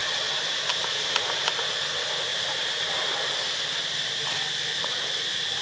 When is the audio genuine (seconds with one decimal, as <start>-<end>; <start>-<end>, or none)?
0.0-5.6